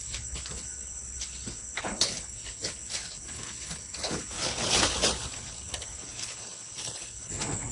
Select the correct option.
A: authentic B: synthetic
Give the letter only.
B